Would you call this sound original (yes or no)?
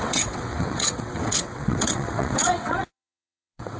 no